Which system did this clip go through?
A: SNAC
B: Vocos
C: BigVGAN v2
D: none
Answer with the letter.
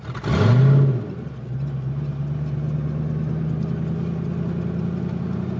D